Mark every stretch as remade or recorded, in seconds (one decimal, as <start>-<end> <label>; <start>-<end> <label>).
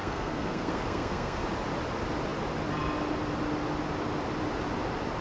0.0-1.4 remade; 1.4-5.2 recorded